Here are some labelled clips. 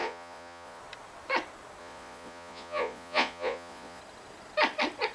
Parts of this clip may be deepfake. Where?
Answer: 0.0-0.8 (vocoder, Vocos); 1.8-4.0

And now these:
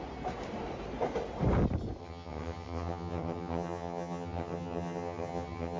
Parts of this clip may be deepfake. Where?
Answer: 2.0-5.8 (vocoder, HiFi-GAN)

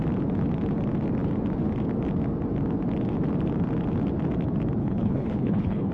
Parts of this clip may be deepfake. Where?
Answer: 4.8-5.9 (codec, HILCodec)

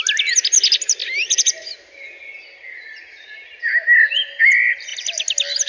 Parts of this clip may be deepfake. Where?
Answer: none

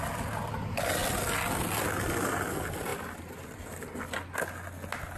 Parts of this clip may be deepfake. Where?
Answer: 2.9-4.0 (vocoder, BigVGAN v2)